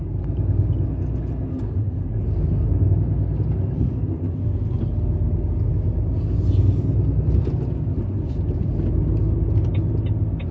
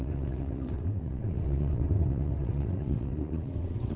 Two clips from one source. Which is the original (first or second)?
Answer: first